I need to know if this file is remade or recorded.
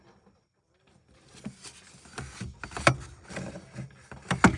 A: recorded